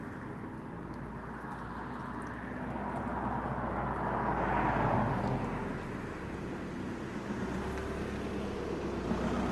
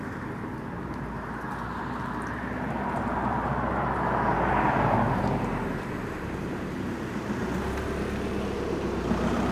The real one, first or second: first